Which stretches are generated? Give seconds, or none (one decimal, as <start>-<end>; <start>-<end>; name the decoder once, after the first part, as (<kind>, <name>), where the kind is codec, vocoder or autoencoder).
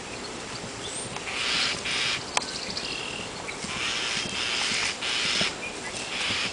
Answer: none